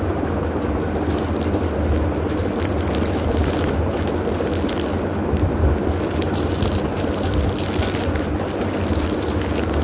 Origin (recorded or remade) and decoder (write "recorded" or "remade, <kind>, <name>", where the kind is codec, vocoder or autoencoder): recorded